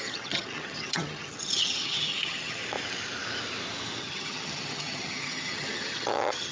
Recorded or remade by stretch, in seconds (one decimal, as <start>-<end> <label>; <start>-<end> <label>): 0.0-2.6 remade; 2.6-4.0 recorded; 4.0-6.5 remade